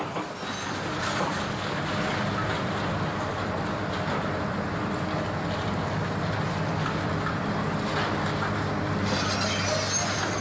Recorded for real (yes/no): yes